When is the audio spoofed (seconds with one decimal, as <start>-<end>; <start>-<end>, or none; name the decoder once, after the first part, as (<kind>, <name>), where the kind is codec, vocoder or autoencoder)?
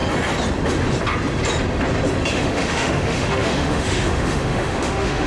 2.3-5.3 (autoencoder, DAC-VAE)